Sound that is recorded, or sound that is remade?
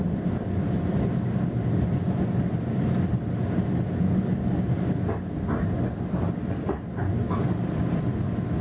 recorded